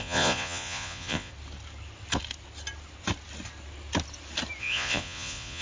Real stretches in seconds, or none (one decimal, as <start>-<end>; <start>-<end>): 1.3-4.6